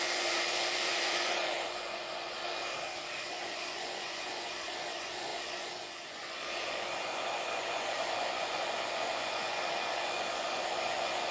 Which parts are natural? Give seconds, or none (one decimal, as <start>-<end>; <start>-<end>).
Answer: 2.4-3.2